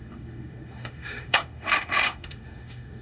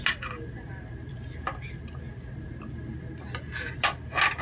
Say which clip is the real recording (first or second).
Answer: second